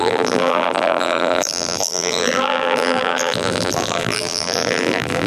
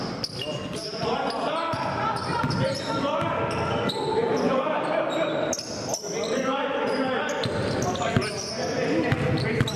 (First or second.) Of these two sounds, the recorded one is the second